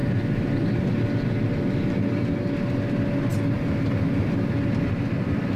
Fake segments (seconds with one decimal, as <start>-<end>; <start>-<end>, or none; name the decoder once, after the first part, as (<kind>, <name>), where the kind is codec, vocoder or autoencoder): none